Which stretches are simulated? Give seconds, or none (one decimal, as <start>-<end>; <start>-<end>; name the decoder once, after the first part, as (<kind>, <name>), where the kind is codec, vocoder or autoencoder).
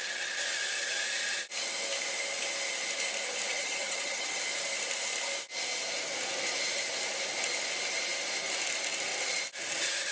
3.5-4.4 (vocoder, HiFi-GAN)